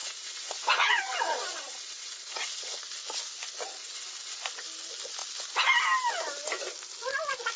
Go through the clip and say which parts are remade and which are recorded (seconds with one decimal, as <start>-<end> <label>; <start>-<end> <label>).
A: 0.0-2.8 remade; 2.8-3.8 recorded; 3.8-4.4 remade; 4.4-7.6 recorded